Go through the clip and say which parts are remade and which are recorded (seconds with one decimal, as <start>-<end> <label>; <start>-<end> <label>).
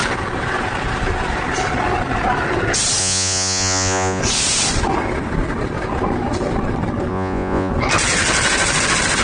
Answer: 0.0-3.0 recorded; 3.0-4.2 remade; 4.2-7.1 recorded; 7.1-7.7 remade; 7.7-9.2 recorded